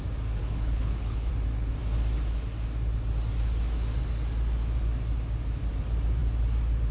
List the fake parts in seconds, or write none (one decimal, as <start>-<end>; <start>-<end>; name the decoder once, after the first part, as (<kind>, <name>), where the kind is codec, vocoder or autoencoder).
0.4-1.3 (codec, HILCodec)